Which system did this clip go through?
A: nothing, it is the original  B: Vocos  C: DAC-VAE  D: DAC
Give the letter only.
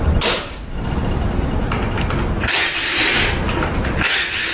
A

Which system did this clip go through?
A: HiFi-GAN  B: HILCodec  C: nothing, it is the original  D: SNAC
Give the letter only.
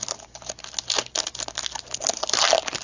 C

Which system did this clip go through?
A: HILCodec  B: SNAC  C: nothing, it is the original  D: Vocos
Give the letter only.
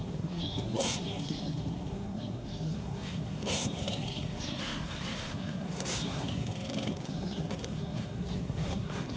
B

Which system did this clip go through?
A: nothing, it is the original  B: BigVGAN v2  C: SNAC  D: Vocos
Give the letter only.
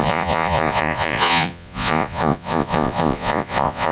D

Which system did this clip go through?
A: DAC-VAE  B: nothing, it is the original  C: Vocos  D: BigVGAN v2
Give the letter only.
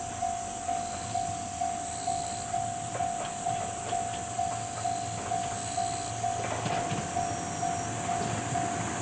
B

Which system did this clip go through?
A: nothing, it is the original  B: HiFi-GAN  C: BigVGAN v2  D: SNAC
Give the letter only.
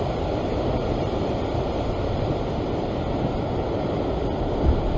A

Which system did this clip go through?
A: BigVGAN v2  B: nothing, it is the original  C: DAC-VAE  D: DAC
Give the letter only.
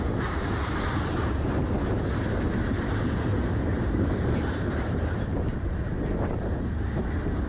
A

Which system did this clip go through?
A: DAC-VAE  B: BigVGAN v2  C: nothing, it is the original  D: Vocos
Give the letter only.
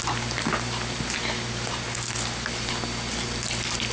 C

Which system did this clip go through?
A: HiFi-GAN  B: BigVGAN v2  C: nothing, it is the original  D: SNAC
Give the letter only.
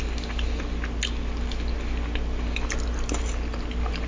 C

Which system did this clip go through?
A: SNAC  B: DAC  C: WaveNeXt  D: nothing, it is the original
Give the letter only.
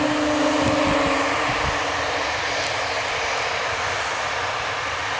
D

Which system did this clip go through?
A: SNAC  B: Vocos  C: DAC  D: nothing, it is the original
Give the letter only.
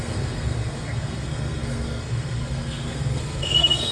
A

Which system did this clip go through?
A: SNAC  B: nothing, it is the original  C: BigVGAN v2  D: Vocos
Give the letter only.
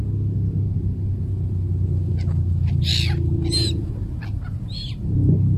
B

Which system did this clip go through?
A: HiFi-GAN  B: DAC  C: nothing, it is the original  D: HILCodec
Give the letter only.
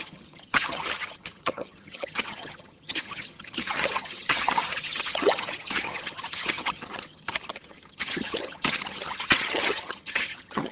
A